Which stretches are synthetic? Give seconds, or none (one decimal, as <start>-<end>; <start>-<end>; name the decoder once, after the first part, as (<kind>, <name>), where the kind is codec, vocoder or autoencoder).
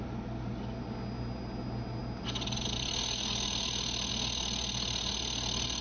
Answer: none